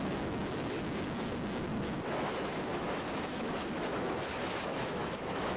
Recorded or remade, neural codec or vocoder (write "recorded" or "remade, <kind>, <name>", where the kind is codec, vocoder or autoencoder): remade, autoencoder, DAC-VAE